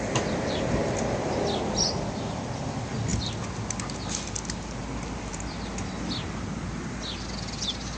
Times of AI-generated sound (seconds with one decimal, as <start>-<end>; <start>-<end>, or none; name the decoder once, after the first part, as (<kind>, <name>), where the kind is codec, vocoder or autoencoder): none